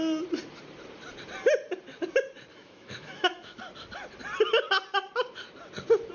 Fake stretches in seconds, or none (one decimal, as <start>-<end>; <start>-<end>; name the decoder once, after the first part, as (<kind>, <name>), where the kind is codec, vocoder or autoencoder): 2.5-3.6 (autoencoder, DAC-VAE)